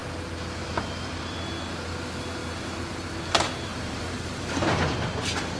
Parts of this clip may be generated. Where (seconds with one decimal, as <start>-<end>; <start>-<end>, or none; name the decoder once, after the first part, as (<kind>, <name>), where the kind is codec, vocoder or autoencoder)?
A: 3.7-4.9 (vocoder, BigVGAN v2)